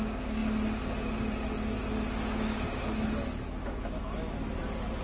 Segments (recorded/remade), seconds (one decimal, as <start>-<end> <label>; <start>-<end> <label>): 0.0-3.6 recorded; 3.6-4.6 remade; 4.6-5.0 recorded